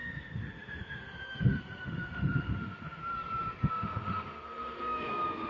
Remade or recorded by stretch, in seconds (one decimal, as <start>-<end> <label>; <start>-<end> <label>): 0.0-3.0 remade; 3.0-3.7 recorded; 3.7-5.5 remade